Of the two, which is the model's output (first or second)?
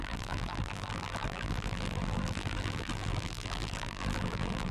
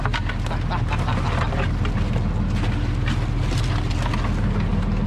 first